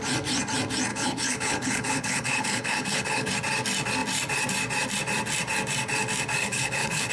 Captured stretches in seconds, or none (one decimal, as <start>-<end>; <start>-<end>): 0.0-0.9; 3.3-6.4